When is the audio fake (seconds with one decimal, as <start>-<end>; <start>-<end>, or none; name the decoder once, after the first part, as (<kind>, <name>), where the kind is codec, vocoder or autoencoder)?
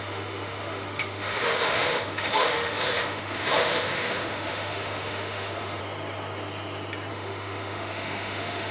0.0-5.8 (autoencoder, DAC-VAE); 7.1-8.7